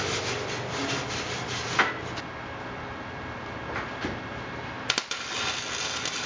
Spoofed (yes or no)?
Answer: no